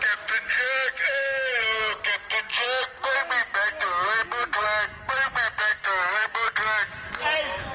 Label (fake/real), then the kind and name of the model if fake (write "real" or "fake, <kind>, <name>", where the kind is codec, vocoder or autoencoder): real